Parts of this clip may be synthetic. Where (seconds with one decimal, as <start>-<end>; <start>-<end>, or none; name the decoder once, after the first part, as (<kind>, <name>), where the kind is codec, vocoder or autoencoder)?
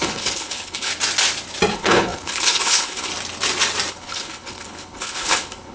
0.0-0.9 (codec, HILCodec); 1.7-3.1; 3.9-5.7